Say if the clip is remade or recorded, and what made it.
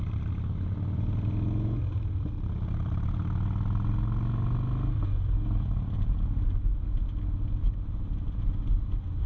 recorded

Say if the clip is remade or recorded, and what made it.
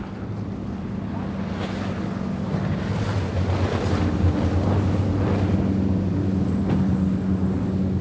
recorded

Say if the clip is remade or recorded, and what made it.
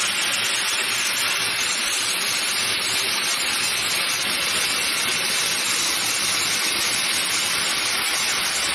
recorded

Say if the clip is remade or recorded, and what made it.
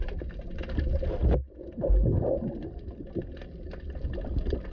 recorded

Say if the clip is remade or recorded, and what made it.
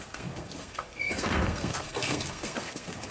remade, codec, SNAC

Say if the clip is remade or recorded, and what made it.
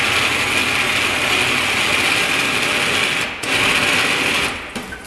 recorded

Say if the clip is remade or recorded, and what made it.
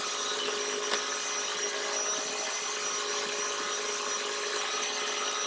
recorded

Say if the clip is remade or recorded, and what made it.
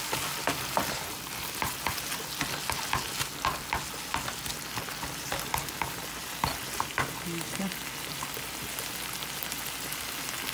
recorded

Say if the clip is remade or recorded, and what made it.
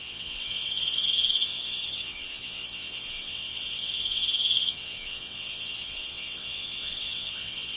remade, vocoder, WaveNeXt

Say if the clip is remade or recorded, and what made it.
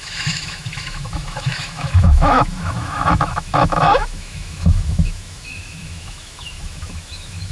remade, autoencoder, DAC-VAE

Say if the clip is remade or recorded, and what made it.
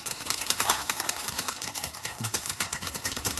remade, codec, SNAC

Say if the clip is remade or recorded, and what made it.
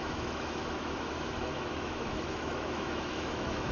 remade, autoencoder, DAC-VAE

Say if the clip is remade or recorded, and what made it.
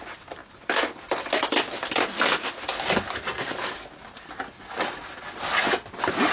recorded